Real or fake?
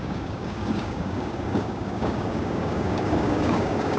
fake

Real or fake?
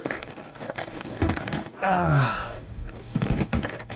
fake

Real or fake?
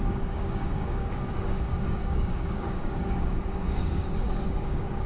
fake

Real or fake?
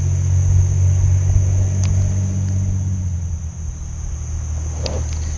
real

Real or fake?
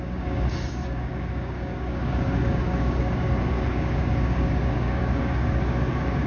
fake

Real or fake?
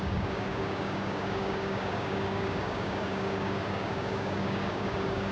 fake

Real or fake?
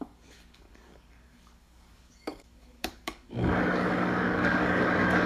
fake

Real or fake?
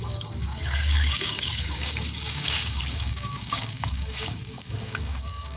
fake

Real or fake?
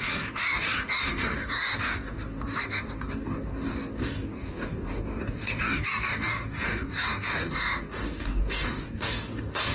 fake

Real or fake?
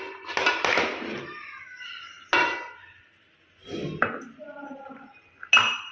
real